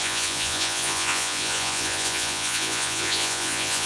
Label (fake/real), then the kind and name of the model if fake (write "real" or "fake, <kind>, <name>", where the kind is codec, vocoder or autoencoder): fake, vocoder, Vocos